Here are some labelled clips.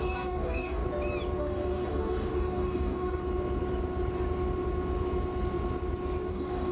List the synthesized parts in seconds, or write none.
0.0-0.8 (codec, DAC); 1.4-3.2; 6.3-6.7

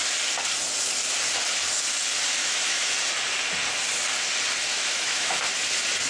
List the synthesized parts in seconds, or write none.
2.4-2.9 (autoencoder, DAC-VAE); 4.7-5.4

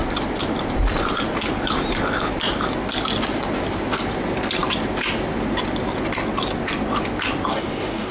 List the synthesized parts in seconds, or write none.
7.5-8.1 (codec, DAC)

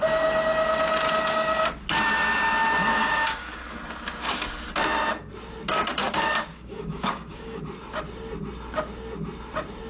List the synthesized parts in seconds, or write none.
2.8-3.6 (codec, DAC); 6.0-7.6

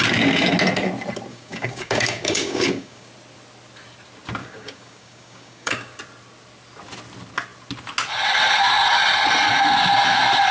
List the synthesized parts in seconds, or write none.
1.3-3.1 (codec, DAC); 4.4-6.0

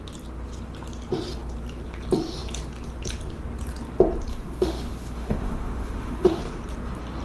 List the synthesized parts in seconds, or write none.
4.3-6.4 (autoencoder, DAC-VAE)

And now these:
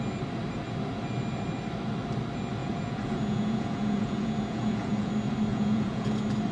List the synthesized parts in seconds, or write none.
2.6-5.1 (vocoder, Vocos); 5.5-6.1

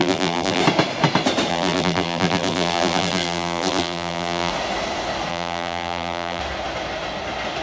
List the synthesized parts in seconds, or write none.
0.0-0.6 (vocoder, BigVGAN v2); 1.5-4.5; 5.3-6.4